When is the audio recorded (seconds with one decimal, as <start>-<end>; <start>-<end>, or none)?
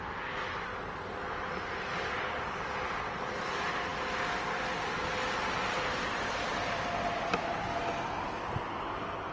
0.0-9.3